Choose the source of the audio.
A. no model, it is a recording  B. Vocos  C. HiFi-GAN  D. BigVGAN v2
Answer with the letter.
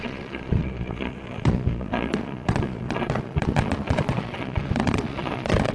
B